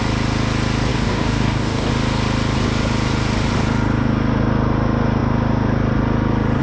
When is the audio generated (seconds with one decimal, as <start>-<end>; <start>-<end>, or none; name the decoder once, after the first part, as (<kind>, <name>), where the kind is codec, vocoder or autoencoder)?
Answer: 0.9-1.9 (codec, DAC)